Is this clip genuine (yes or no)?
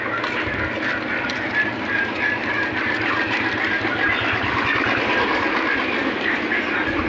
yes